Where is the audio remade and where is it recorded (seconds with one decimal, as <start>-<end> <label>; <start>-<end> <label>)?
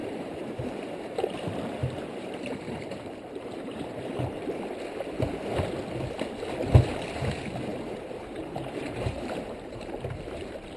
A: 0.0-1.2 remade; 1.2-1.8 recorded; 1.8-4.6 remade; 4.6-7.7 recorded; 7.7-10.8 remade